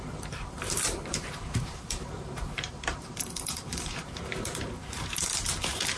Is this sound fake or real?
fake